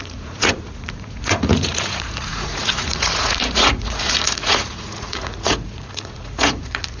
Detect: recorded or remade remade